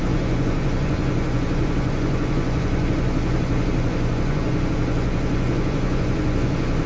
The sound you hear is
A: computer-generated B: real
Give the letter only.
A